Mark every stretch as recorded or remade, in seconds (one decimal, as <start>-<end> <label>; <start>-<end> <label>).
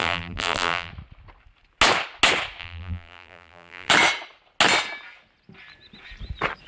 0.0-0.9 remade; 0.9-2.6 recorded; 2.6-3.9 remade; 3.9-6.7 recorded